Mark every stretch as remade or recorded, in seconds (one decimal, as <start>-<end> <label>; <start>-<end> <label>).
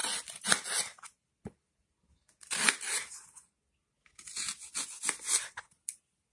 0.0-6.3 recorded